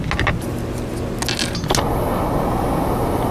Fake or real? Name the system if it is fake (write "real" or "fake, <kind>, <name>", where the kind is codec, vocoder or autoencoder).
real